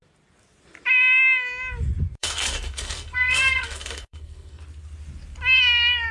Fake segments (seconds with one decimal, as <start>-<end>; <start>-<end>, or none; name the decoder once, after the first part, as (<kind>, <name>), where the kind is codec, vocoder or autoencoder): 2.2-4.6 (codec, SNAC)